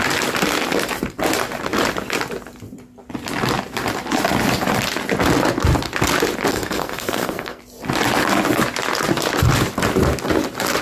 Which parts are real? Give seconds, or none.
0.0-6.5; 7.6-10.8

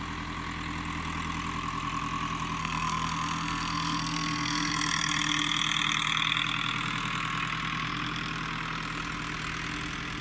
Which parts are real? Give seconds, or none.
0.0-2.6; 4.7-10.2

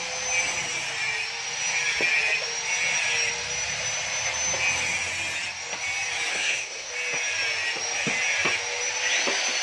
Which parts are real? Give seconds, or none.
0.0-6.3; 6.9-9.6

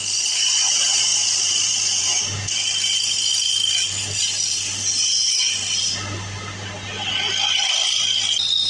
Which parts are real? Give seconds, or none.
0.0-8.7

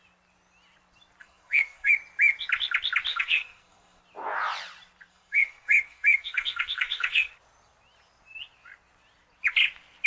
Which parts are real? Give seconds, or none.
0.0-1.2; 1.9-3.1; 4.0-5.1; 7.3-10.1

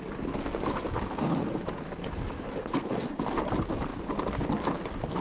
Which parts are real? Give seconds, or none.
0.0-2.6; 3.2-5.2

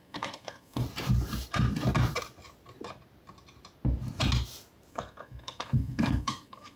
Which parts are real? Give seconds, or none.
0.8-4.9

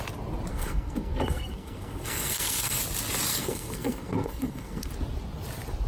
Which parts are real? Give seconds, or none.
0.0-0.5; 2.8-3.3; 4.9-5.9